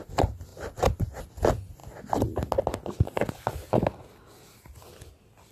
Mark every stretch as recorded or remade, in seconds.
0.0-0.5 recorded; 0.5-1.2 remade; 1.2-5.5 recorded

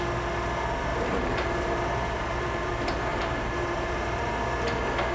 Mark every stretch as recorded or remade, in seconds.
0.0-0.9 recorded; 0.9-2.7 remade; 2.7-3.1 recorded; 3.1-4.3 remade; 4.3-5.1 recorded

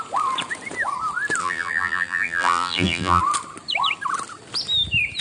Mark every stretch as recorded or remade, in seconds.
0.0-1.4 recorded; 1.4-3.2 remade; 3.2-5.2 recorded